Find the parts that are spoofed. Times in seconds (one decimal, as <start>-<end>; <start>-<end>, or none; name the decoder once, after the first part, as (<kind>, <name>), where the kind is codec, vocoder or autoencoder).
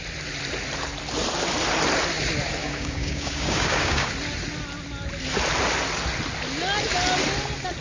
2.6-4.1 (codec, DAC)